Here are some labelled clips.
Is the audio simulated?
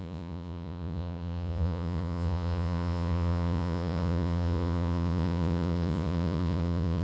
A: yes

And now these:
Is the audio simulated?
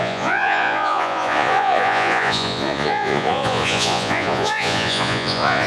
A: yes